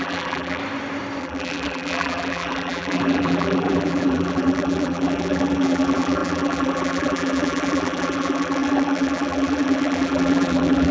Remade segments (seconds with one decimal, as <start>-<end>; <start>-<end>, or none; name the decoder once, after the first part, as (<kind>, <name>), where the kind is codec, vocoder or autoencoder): 0.0-0.6 (vocoder, BigVGAN v2); 1.2-10.9